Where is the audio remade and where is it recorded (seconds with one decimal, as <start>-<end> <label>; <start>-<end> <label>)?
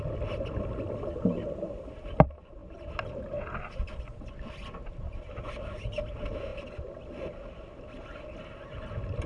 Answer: 0.0-9.3 recorded